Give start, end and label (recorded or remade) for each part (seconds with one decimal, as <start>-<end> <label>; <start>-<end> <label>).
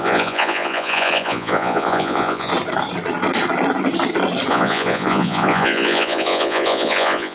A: 0.0-2.5 remade; 2.5-4.5 recorded; 4.5-7.3 remade